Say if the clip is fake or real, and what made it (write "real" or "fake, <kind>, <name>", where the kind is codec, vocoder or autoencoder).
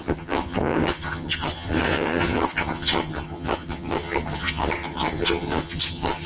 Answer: fake, vocoder, HiFi-GAN